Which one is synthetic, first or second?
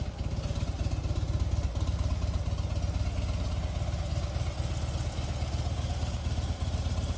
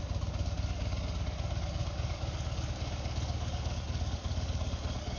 second